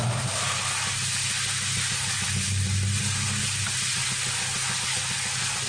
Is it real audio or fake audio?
real